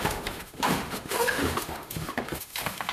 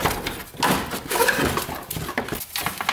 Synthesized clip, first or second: first